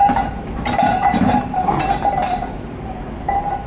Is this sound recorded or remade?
remade